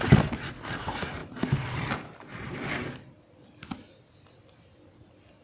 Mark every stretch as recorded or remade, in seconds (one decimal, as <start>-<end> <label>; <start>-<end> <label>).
0.0-5.4 recorded